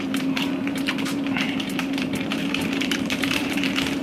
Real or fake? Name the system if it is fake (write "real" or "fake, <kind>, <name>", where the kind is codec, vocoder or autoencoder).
fake, vocoder, BigVGAN v2